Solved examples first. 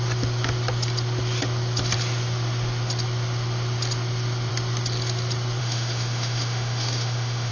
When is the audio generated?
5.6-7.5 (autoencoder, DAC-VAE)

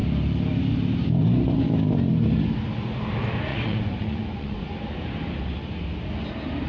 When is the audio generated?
3.5-4.6 (vocoder, Vocos)

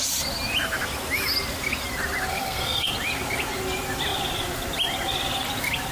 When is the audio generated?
2.3-2.9 (codec, SNAC)

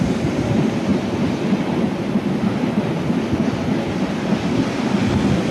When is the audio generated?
none

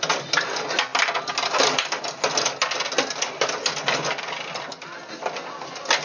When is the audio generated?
none

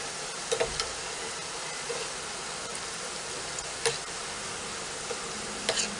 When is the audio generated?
none

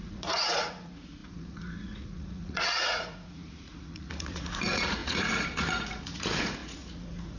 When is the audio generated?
0.0-7.4 (vocoder, Vocos)